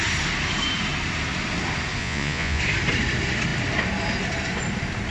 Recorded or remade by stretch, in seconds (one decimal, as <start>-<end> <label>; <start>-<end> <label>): 0.0-2.0 recorded; 2.0-2.6 remade; 2.6-5.1 recorded